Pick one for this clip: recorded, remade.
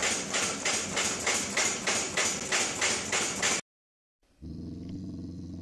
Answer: recorded